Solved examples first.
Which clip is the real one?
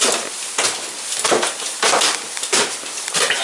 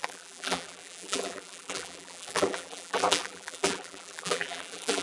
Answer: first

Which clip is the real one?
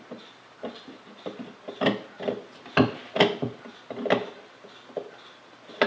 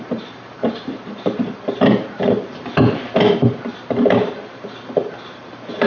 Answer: first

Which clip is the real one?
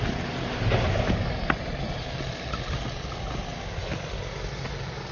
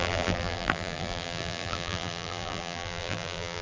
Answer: first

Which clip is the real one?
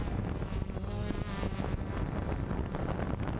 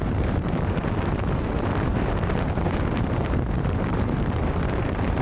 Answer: first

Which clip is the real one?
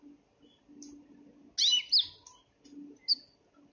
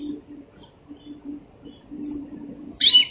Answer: first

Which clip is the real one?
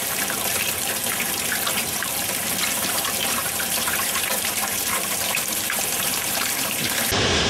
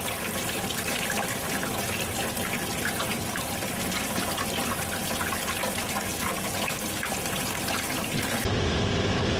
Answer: second